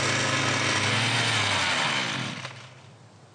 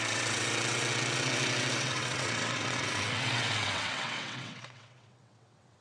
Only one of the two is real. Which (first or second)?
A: first